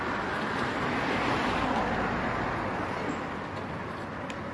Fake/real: real